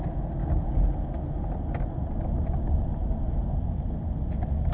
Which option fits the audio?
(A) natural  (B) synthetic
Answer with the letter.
A